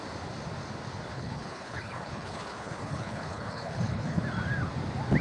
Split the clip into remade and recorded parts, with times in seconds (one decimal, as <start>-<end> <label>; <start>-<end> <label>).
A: 0.0-1.1 recorded; 1.1-4.2 remade; 4.2-5.2 recorded